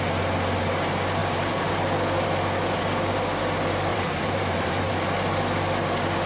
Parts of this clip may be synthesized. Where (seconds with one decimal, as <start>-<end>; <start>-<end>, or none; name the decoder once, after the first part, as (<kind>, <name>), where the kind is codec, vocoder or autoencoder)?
1.2-1.7 (vocoder, BigVGAN v2); 3.9-4.9